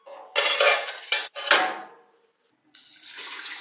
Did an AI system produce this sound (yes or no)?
no